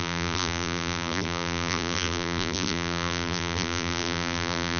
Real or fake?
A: fake